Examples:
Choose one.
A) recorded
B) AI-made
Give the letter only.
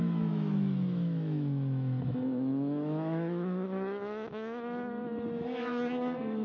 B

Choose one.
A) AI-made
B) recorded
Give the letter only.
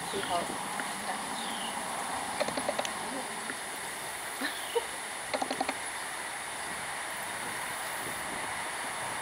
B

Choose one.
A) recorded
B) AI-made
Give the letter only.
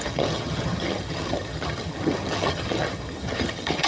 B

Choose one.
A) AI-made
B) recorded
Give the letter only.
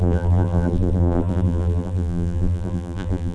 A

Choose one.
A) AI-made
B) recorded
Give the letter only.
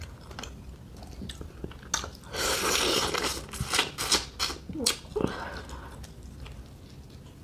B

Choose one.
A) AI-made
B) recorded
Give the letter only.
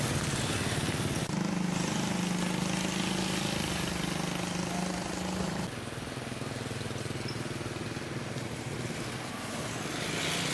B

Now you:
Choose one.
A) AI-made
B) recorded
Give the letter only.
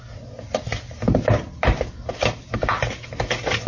B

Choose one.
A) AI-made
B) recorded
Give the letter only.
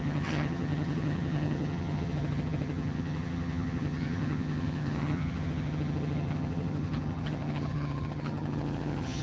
A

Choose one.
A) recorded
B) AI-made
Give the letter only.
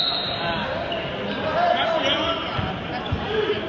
A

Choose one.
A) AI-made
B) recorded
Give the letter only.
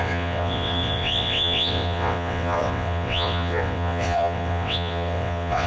A